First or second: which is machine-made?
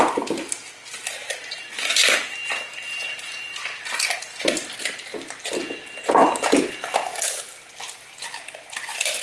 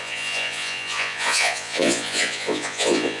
second